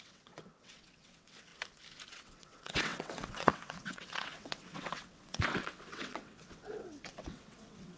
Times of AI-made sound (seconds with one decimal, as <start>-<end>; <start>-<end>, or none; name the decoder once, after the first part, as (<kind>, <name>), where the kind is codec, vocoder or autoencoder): 0.0-1.5 (vocoder, WaveNeXt); 2.1-8.0